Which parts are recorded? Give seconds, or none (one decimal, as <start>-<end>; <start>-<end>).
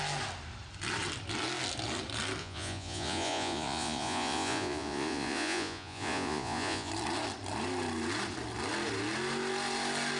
0.0-2.4; 6.9-10.2